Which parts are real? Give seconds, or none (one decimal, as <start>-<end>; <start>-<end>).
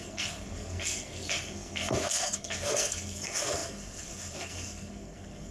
none